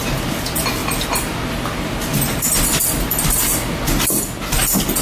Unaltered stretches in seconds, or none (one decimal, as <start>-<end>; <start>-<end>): 0.0-5.0